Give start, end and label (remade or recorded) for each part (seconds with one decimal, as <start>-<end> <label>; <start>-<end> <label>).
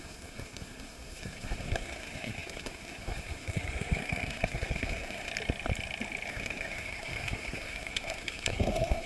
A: 0.0-5.3 remade; 5.3-6.3 recorded; 6.3-9.1 remade